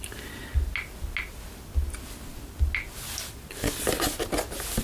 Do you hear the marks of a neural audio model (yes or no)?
no